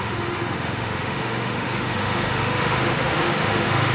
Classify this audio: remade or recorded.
remade